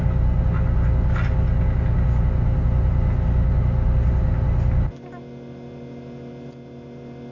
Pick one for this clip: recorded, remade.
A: recorded